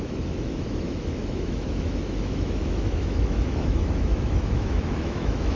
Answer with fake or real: fake